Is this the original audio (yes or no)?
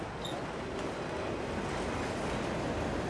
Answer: yes